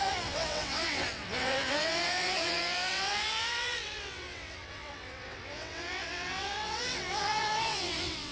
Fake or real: fake